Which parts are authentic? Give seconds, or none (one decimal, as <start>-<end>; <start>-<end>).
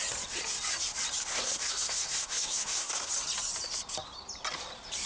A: 0.0-1.3; 3.1-5.1